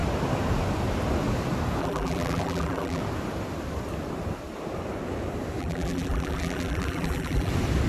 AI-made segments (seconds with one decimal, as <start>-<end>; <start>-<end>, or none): 1.8-3.0; 5.6-7.5